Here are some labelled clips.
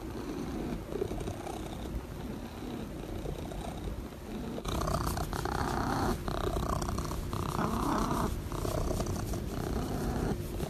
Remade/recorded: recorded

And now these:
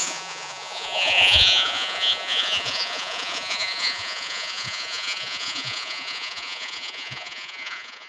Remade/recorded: remade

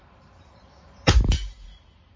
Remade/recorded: remade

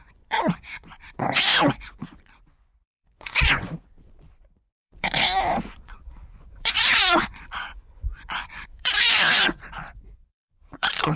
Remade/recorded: remade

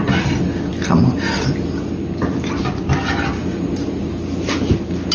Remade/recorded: recorded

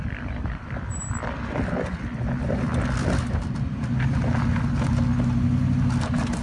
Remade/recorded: recorded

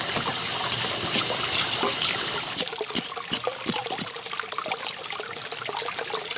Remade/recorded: recorded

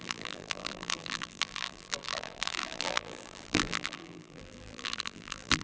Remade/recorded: remade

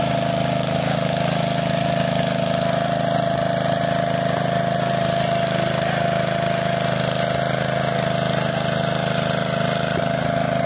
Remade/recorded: recorded